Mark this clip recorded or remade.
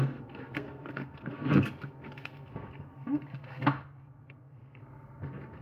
remade